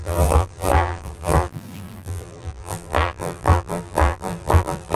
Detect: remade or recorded remade